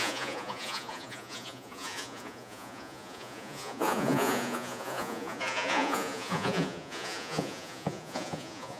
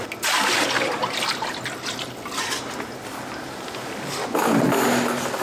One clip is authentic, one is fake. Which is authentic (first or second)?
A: second